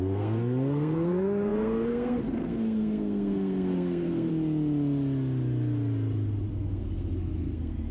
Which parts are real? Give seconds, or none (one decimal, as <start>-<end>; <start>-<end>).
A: 4.3-6.5